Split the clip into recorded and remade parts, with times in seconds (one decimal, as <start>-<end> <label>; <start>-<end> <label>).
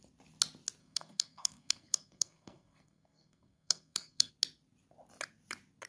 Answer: 0.0-0.8 recorded; 0.8-4.3 remade; 4.3-5.9 recorded